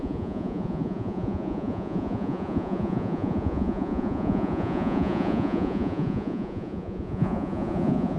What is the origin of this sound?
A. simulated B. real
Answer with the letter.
A